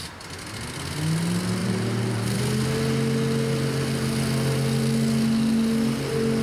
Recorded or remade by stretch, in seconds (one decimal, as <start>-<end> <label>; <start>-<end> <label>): 0.0-1.6 recorded; 1.6-2.4 remade; 2.4-6.4 recorded